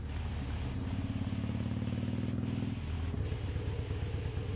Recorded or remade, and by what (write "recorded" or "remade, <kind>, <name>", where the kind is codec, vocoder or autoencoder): recorded